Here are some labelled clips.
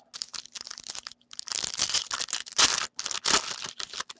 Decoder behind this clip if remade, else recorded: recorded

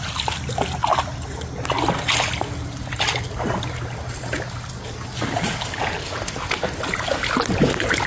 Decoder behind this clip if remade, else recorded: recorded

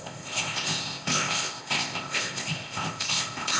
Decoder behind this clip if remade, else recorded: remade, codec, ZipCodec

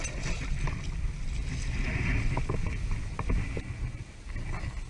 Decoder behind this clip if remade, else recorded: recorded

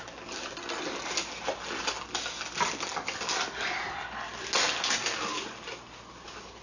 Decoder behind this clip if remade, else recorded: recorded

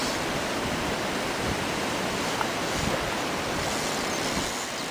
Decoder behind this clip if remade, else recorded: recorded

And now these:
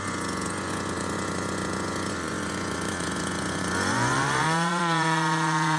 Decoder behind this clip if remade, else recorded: remade, vocoder, Vocos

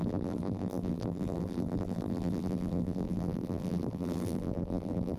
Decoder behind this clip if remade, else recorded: remade, vocoder, BigVGAN v2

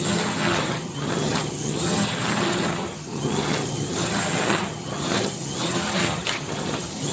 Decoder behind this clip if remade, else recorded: remade, vocoder, HiFi-GAN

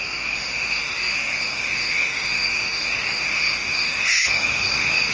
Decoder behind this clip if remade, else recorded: remade, autoencoder, DAC-VAE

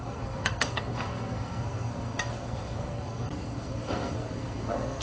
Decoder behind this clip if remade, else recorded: remade, codec, SNAC